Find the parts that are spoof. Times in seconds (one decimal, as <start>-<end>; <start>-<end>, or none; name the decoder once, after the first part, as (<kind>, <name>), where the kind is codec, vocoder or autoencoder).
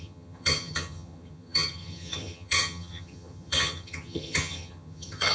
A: 0.0-5.3 (vocoder, HiFi-GAN)